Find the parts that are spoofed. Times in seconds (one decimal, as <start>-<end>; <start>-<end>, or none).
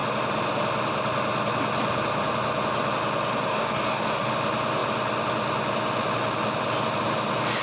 3.5-4.3